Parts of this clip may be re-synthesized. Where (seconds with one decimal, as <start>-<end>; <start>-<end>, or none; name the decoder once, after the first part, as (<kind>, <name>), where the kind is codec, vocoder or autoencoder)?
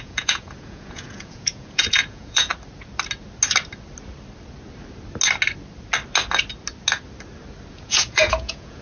0.0-2.5 (vocoder, Vocos); 7.7-8.8